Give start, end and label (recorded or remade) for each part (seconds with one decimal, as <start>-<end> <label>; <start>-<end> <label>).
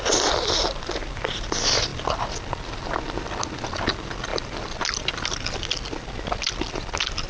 0.0-7.3 recorded